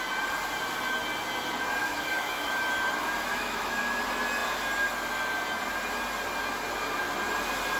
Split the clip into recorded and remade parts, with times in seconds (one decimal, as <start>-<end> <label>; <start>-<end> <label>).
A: 0.0-1.8 recorded; 1.8-2.7 remade; 2.7-3.3 recorded; 3.3-4.0 remade; 4.0-7.8 recorded